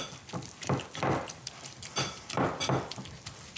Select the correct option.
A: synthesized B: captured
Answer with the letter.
B